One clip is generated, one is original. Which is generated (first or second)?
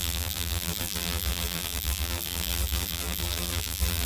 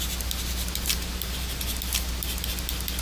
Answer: first